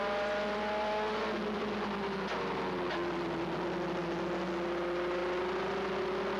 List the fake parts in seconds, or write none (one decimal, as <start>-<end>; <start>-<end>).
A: none